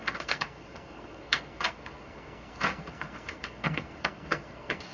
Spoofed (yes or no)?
yes